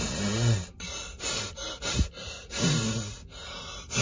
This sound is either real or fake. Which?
real